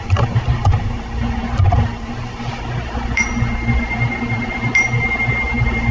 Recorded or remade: remade